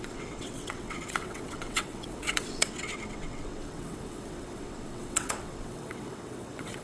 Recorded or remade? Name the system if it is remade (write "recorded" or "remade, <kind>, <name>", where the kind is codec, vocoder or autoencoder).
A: remade, vocoder, WaveNeXt